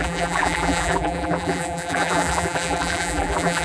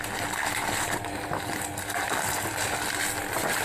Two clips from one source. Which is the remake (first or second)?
first